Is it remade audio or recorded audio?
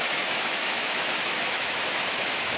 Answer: remade